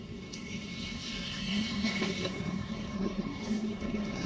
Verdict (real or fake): fake